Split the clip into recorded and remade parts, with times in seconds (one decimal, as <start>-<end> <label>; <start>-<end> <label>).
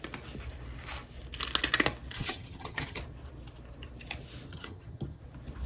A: 0.0-2.1 recorded; 2.1-3.0 remade; 3.0-4.5 recorded; 4.5-5.2 remade; 5.2-5.7 recorded